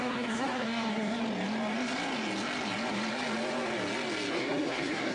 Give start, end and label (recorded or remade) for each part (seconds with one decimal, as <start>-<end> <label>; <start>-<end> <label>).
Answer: 0.0-1.2 remade; 1.2-4.3 recorded; 4.3-5.1 remade